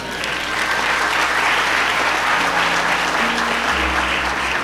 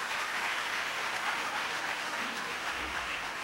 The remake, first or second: second